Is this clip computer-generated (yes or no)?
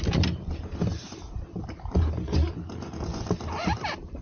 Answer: yes